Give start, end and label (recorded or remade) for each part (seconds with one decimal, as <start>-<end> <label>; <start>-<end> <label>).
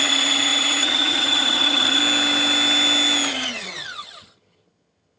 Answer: 0.0-2.0 remade; 2.0-3.3 recorded; 3.3-5.2 remade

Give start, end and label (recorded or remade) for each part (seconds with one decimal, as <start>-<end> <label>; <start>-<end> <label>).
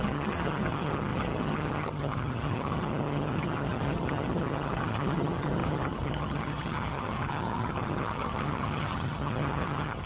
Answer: 0.0-10.1 remade